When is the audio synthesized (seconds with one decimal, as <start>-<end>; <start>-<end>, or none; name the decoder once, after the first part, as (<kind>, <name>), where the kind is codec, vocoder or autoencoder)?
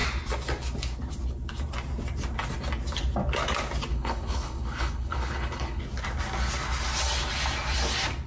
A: 3.9-5.8 (codec, HILCodec)